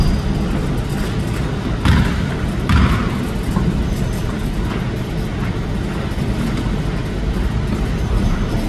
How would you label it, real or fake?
real